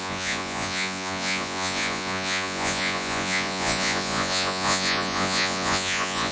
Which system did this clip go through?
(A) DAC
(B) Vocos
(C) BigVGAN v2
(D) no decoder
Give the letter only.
B